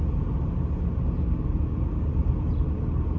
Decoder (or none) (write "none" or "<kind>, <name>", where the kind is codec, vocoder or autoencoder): none